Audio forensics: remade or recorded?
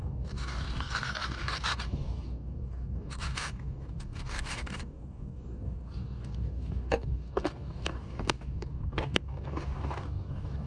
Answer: remade